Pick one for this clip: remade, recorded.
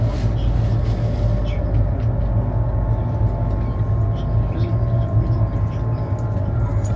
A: recorded